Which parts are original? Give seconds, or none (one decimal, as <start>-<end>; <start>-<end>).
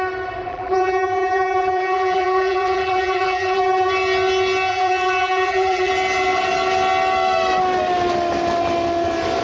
0.0-0.5; 3.9-4.7; 5.9-9.4